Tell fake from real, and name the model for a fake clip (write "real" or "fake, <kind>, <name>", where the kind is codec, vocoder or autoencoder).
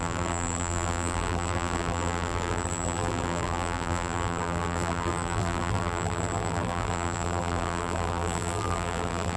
fake, vocoder, BigVGAN v2